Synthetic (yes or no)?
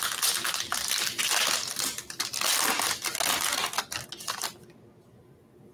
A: no